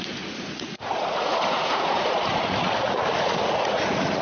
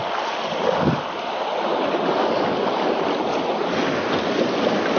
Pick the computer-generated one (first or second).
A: first